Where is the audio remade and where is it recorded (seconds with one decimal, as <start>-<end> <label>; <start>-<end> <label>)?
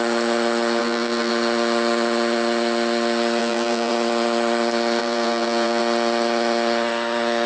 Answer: 0.0-0.8 recorded; 0.8-1.3 remade; 1.3-3.4 recorded; 3.4-3.9 remade; 3.9-5.0 recorded; 5.0-5.8 remade; 5.8-7.5 recorded